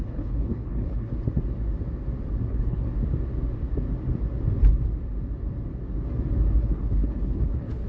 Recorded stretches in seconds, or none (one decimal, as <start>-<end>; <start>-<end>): 1.1-2.5; 2.9-6.6